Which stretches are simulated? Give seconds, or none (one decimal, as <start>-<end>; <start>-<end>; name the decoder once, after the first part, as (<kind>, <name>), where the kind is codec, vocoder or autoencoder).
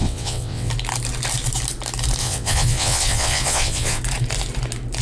0.0-0.7 (vocoder, WaveNeXt); 2.2-4.0